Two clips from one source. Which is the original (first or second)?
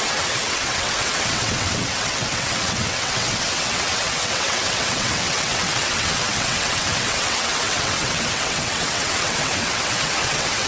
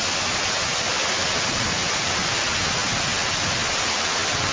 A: second